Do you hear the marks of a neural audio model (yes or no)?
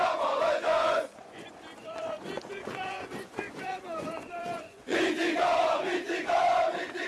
yes